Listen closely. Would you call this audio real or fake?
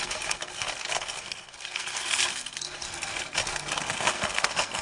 fake